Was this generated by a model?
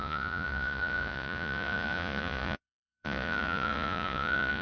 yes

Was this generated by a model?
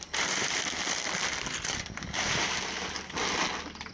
no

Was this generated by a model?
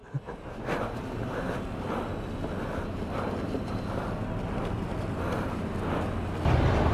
no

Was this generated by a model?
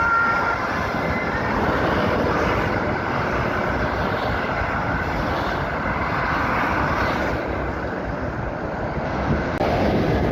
no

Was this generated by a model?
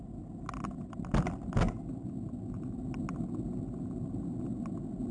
no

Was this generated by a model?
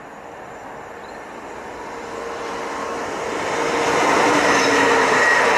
no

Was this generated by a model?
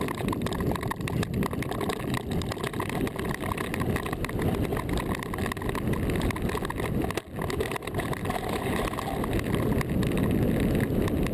yes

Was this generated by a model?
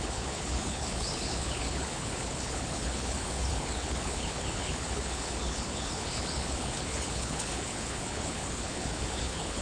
yes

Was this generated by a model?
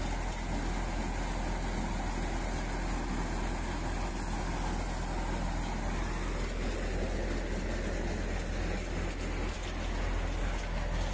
no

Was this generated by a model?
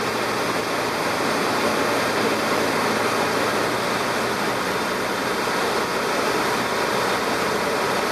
no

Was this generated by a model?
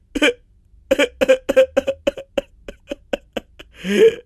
no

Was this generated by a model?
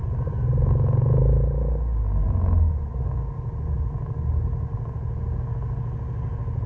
no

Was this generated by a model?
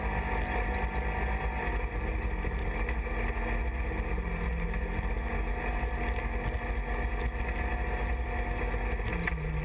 no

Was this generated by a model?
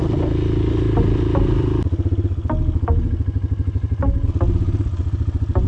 no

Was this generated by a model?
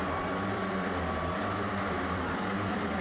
yes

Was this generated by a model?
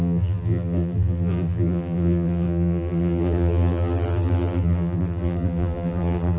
yes